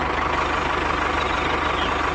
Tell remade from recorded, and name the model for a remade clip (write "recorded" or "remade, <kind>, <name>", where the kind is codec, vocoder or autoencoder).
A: recorded